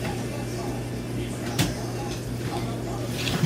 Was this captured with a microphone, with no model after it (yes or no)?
yes